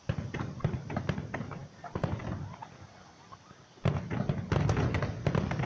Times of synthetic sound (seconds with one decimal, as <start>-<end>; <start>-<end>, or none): 1.6-2.2